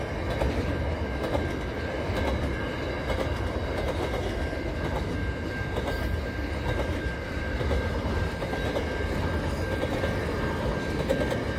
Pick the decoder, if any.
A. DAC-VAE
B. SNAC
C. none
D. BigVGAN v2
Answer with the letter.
C